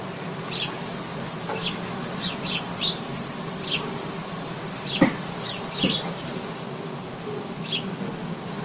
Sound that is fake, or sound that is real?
real